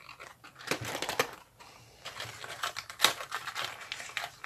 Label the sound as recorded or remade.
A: recorded